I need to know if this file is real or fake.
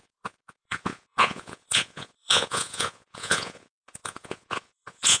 fake